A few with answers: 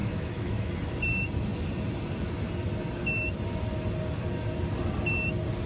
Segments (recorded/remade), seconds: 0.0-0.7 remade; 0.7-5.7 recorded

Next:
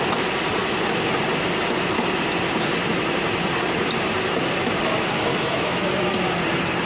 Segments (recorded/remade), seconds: 0.0-5.3 recorded; 5.3-6.0 remade; 6.0-6.9 recorded